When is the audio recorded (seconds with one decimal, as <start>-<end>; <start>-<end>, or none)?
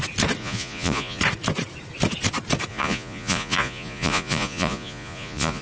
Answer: 0.0-0.4; 1.2-2.7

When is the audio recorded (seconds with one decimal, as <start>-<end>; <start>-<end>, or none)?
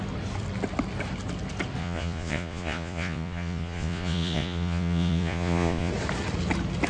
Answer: 0.0-1.8; 5.9-6.9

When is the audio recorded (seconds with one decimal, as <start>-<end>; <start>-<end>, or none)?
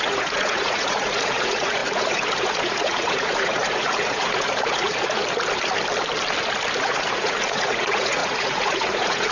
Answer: 5.2-6.8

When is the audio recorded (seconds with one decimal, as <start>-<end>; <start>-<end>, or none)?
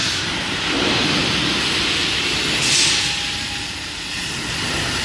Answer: 0.0-5.0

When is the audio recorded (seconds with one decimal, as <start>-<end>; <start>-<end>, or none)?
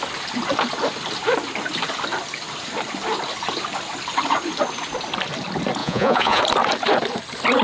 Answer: 0.0-5.8; 6.4-7.6